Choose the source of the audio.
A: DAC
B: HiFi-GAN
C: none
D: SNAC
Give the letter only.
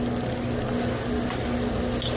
C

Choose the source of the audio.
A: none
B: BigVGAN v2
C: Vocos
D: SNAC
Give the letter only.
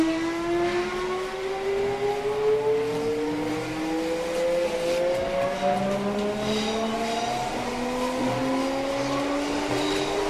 A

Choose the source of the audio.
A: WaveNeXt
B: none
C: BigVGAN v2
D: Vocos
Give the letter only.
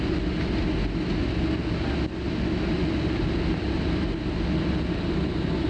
B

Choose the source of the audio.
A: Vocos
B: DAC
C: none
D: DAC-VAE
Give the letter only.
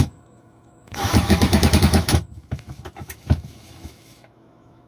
D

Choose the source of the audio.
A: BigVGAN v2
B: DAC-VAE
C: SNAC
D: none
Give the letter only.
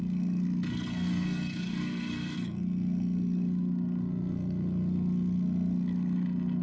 C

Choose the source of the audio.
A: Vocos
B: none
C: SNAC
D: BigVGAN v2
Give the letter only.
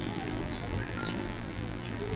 D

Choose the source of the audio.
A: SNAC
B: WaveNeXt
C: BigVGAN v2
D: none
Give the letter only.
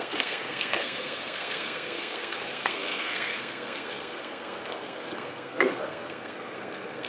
A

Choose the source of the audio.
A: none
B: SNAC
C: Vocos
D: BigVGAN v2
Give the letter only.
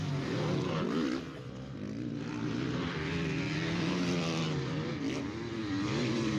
A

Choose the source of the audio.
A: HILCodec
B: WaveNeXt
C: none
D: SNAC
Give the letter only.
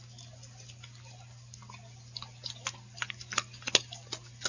C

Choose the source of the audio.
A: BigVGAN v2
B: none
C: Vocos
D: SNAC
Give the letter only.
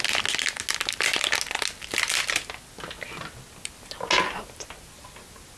B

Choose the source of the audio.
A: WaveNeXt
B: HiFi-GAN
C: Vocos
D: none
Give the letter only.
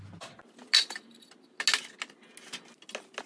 D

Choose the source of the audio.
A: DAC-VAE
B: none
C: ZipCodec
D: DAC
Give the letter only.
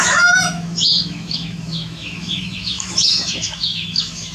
A